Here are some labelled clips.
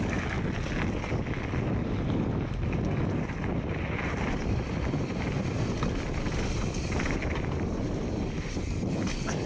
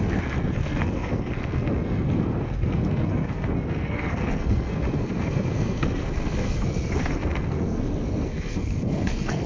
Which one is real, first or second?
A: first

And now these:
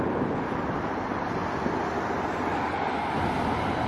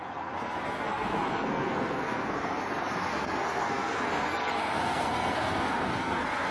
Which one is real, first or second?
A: first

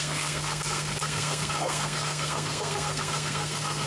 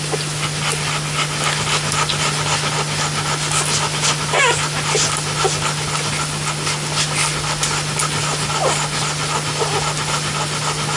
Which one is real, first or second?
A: second